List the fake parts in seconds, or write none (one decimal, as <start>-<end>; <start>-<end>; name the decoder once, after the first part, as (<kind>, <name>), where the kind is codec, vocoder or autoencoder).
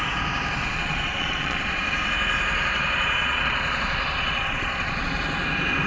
0.7-1.8 (vocoder, Vocos); 3.2-5.1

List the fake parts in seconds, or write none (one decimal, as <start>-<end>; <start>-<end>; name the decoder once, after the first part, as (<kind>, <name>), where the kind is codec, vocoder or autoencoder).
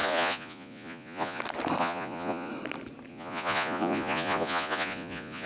0.0-1.4 (vocoder, Vocos); 1.8-2.5; 3.1-5.5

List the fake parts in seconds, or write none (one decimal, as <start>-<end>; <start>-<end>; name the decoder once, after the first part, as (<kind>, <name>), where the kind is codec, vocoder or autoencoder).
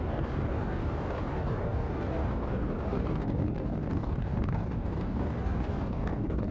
0.0-6.5 (codec, DAC)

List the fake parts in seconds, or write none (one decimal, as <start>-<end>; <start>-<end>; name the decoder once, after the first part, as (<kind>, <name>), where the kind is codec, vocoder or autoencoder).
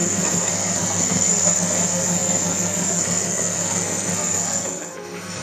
0.0-5.4 (codec, SNAC)